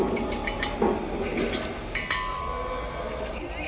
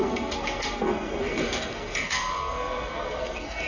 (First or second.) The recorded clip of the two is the first